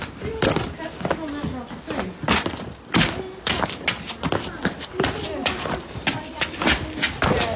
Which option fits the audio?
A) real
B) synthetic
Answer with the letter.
A